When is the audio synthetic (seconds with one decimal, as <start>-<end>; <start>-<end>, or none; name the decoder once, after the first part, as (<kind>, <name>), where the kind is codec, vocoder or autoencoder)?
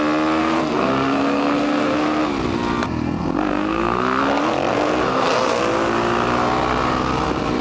0.4-2.2 (codec, SNAC); 3.4-4.2; 4.7-5.6